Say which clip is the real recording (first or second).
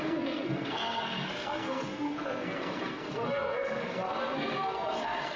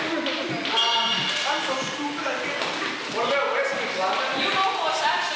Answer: second